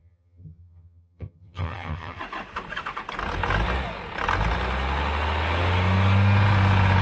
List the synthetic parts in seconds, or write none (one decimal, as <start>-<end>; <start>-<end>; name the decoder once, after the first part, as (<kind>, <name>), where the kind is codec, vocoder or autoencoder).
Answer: 0.0-2.2 (vocoder, HiFi-GAN)